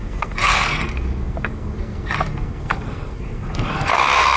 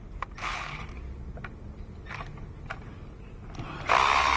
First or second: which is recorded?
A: second